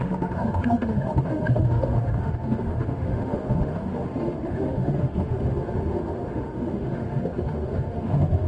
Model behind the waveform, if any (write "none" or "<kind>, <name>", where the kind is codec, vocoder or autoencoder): autoencoder, DAC-VAE